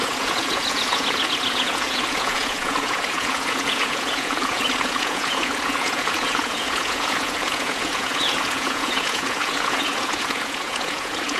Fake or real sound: fake